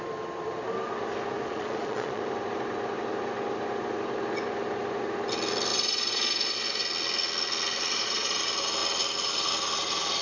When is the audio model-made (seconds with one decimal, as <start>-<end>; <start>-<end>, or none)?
1.5-2.2; 5.7-6.8; 7.9-8.4